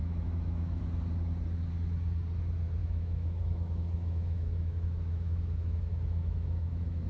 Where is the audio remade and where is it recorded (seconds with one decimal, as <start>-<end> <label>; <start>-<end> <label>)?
0.0-0.8 remade; 0.8-2.8 recorded; 2.8-7.1 remade

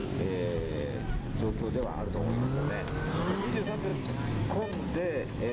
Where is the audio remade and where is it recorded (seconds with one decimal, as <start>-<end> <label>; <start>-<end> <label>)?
0.0-5.5 recorded

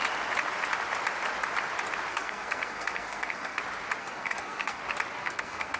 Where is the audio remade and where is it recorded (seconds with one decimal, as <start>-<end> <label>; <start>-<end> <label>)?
0.0-2.1 recorded; 2.1-3.6 remade; 3.6-4.0 recorded; 4.0-4.8 remade; 4.8-5.2 recorded; 5.2-5.8 remade

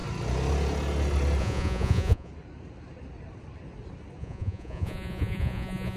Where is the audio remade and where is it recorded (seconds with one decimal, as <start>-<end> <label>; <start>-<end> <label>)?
0.0-1.4 recorded; 1.4-2.3 remade; 2.3-4.2 recorded; 4.2-6.0 remade

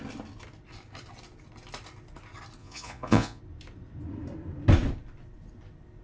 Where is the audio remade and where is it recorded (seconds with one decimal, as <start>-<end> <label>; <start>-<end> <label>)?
0.0-2.6 recorded; 2.6-3.4 remade; 3.4-6.0 recorded

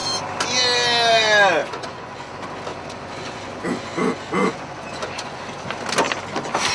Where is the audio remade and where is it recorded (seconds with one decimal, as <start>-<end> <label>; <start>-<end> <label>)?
0.0-1.6 recorded; 1.6-2.3 remade; 2.3-2.7 recorded; 2.7-5.4 remade; 5.4-6.7 recorded

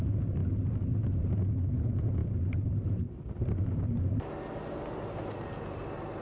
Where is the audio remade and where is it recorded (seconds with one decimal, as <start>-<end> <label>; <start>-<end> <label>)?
0.0-6.2 recorded